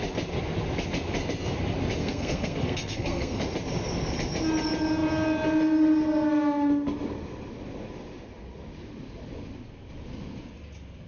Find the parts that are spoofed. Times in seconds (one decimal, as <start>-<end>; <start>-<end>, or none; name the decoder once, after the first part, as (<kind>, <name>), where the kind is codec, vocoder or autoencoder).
2.0-3.4 (codec, SNAC)